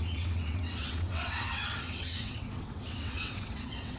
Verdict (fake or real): fake